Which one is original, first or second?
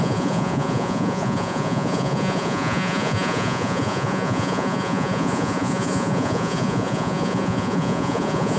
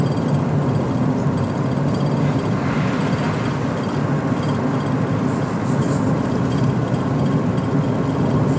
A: second